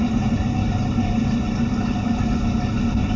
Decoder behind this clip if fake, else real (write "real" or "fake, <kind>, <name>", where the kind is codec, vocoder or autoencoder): real